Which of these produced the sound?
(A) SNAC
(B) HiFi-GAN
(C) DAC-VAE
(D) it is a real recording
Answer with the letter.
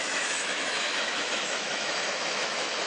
C